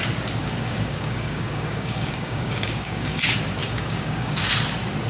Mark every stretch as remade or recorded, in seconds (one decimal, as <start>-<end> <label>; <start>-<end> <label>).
0.0-0.4 recorded; 0.4-3.2 remade; 3.2-3.6 recorded; 3.6-4.5 remade; 4.5-5.1 recorded